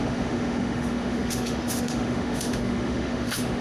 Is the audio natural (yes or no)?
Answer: no